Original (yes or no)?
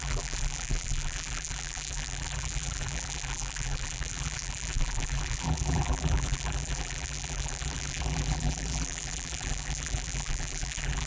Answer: no